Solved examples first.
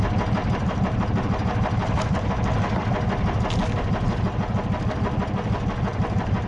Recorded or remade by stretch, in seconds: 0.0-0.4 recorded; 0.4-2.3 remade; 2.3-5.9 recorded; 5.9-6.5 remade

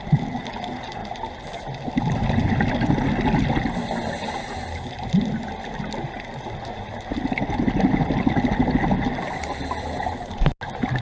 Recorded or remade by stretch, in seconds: 0.0-11.0 recorded

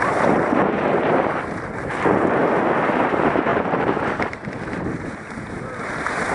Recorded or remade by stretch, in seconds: 0.0-2.4 remade; 2.4-3.0 recorded; 3.0-6.3 remade